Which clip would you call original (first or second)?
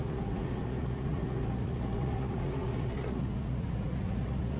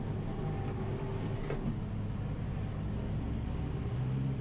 second